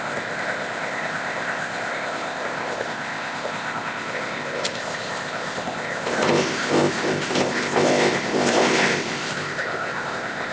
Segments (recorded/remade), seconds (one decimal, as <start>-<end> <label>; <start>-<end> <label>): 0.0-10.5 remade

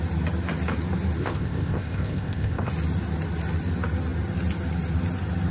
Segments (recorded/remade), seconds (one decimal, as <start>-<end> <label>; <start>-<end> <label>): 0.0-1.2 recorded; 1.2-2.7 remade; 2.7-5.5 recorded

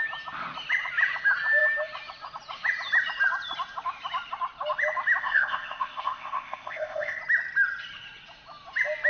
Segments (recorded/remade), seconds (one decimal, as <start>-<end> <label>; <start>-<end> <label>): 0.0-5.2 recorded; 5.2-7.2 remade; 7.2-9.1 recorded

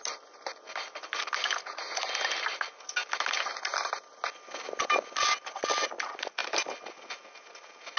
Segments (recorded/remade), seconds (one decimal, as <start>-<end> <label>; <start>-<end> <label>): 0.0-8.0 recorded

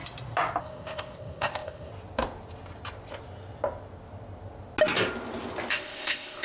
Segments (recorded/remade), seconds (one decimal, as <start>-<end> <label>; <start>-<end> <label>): 0.0-0.6 recorded; 0.6-1.9 remade; 1.9-5.7 recorded; 5.7-6.4 remade